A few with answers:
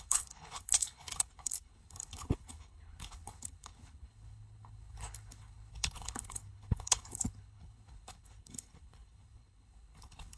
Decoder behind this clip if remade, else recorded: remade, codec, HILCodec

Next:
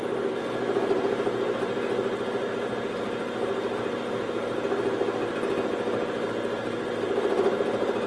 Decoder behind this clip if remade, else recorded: recorded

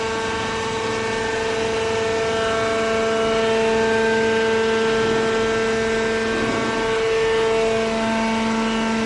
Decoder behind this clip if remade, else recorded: recorded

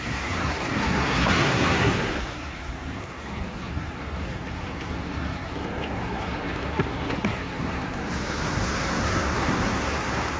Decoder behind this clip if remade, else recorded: remade, codec, SNAC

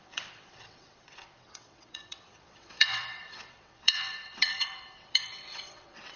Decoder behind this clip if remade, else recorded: remade, vocoder, WaveNeXt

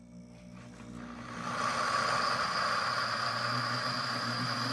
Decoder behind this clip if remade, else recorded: recorded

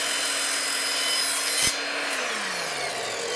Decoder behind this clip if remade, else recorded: recorded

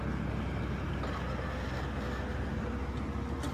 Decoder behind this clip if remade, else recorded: recorded